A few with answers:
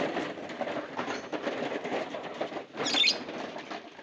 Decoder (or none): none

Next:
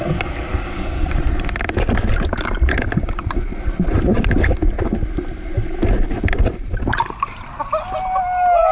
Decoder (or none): none